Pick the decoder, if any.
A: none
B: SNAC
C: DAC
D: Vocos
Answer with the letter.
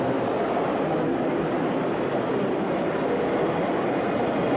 A